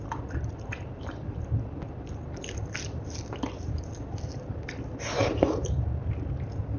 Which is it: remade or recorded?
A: recorded